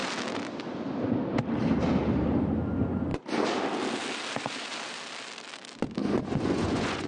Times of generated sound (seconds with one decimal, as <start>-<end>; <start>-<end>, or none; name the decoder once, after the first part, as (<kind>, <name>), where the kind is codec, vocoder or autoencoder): 6.0-7.1 (vocoder, Vocos)

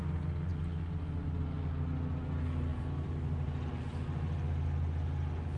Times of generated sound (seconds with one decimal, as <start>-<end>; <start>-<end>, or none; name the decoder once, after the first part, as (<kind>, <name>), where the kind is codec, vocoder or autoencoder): 2.7-3.7 (vocoder, BigVGAN v2)

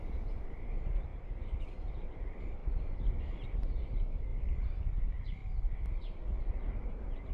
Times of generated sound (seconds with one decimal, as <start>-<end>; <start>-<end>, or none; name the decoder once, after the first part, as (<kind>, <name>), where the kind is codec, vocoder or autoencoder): 0.0-4.3 (vocoder, BigVGAN v2); 5.0-5.4; 6.8-7.3

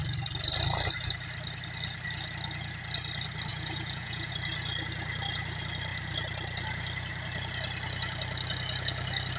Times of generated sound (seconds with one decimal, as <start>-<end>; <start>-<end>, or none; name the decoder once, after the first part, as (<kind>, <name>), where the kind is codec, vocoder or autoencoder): 3.5-4.3 (vocoder, Vocos)

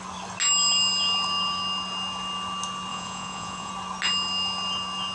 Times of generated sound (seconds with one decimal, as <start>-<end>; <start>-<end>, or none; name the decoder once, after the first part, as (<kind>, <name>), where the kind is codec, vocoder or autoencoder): 2.9-3.7 (vocoder, Vocos)

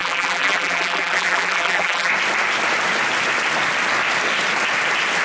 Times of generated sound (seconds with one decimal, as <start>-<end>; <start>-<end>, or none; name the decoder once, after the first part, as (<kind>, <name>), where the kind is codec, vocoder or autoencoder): 0.0-2.1 (vocoder, BigVGAN v2)